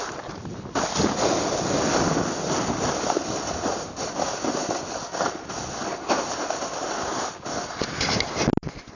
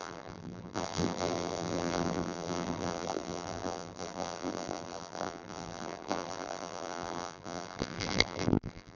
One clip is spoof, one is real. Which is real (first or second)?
first